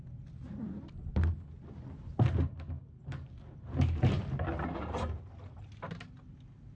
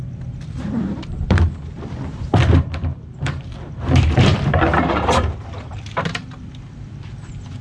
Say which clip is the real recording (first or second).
first